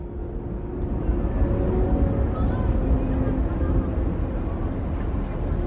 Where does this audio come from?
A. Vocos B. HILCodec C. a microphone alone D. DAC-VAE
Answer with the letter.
C